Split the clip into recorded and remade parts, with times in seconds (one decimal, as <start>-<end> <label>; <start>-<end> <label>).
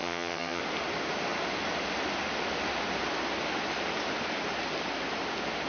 0.0-0.6 remade; 0.6-5.7 recorded